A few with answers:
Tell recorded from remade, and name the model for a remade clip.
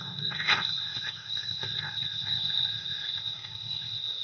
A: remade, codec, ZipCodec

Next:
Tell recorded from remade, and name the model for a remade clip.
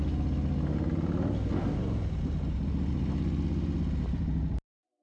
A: recorded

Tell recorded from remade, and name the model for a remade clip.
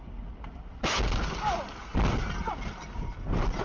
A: recorded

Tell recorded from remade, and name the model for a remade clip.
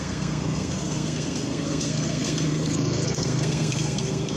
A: remade, codec, SNAC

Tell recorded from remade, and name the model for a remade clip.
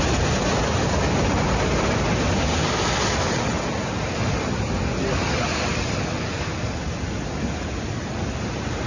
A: recorded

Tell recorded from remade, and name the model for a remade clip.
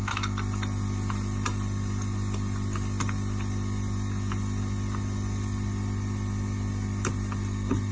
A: recorded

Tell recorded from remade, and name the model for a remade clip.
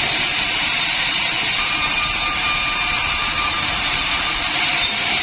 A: remade, vocoder, BigVGAN v2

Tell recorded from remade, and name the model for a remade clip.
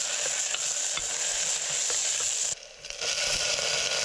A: recorded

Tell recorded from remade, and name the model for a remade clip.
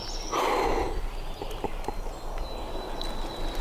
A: recorded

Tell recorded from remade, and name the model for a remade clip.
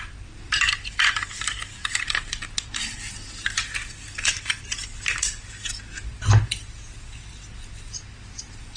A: remade, vocoder, BigVGAN v2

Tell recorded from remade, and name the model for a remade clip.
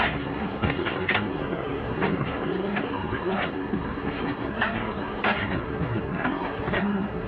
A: remade, codec, SNAC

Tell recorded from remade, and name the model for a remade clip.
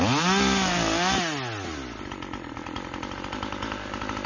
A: recorded